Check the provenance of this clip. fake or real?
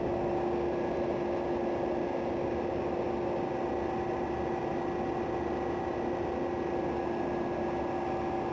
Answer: real